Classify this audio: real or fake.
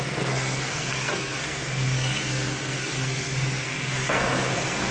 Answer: fake